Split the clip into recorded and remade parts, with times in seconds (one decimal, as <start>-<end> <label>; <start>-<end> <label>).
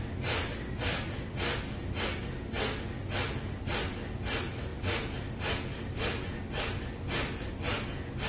0.0-8.3 recorded